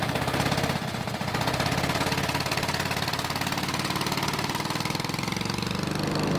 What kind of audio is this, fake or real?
real